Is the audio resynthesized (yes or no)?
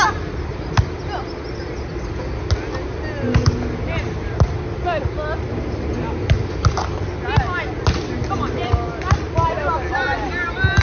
no